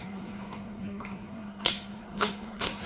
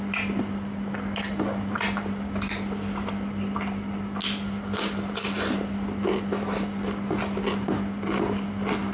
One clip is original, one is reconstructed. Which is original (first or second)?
second